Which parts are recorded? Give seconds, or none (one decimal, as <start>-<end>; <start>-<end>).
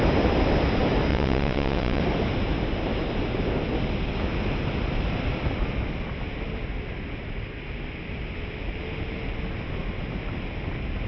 0.0-1.1; 2.0-11.1